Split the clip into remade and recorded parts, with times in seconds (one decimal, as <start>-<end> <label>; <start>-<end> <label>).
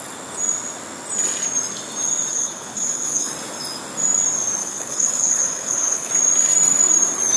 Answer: 0.0-2.3 recorded; 2.3-3.3 remade; 3.3-4.6 recorded; 4.6-6.1 remade; 6.1-7.4 recorded